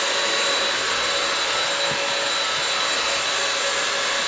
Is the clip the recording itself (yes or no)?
yes